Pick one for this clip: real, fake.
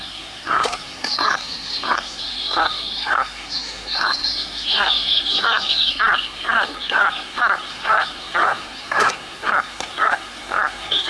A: fake